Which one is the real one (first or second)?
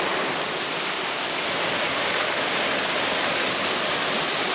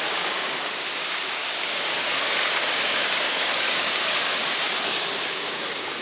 first